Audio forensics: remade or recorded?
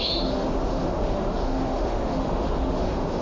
remade